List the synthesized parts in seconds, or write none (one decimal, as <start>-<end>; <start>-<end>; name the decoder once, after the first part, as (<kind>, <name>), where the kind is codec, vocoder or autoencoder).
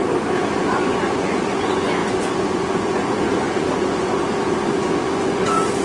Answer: 0.6-4.2 (vocoder, Vocos); 4.7-5.8